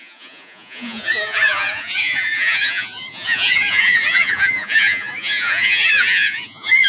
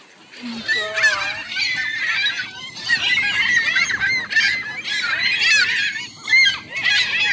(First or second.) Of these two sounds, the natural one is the second